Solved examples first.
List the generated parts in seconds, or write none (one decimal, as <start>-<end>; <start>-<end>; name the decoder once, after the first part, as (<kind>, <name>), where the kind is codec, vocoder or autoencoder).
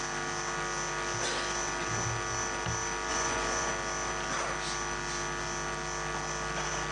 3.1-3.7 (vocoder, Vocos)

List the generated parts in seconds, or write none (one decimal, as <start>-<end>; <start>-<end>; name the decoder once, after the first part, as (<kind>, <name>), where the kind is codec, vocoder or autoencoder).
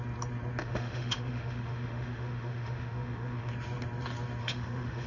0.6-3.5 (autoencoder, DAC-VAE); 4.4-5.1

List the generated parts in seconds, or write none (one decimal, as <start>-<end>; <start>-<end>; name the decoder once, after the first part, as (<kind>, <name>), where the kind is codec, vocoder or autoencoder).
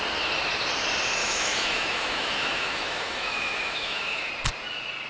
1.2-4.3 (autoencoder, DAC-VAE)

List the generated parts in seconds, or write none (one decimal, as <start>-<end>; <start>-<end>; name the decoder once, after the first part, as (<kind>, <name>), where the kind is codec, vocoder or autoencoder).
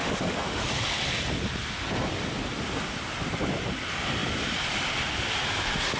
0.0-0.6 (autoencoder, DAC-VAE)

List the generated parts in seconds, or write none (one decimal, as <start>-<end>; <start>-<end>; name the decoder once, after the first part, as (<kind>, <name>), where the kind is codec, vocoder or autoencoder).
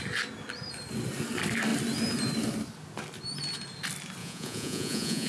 4.2-5.3 (vocoder, Vocos)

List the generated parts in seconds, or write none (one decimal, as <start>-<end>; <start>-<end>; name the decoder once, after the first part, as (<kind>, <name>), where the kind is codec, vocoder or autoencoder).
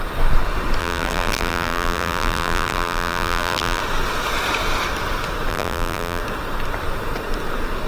0.8-3.8 (vocoder, BigVGAN v2); 5.5-6.2